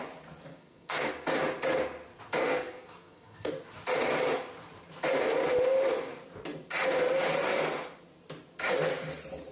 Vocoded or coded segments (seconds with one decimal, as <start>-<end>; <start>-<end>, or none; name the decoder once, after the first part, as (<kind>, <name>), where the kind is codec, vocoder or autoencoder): 0.5-1.1 (codec, SNAC); 2.4-3.5